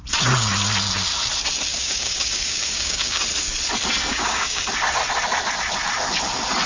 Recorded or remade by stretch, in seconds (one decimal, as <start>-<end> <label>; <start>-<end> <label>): 0.0-1.7 recorded; 1.7-3.2 remade; 3.2-4.1 recorded; 4.1-4.6 remade; 4.6-6.7 recorded